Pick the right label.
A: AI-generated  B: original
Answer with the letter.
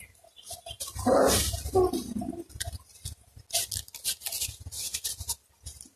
B